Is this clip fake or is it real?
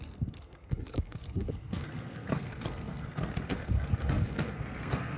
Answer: fake